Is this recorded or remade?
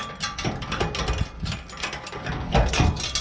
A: recorded